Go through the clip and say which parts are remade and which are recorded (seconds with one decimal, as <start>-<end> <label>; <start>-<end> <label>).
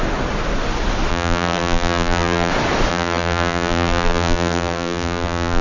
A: 0.0-1.1 recorded; 1.1-2.5 remade; 2.5-2.9 recorded; 2.9-5.6 remade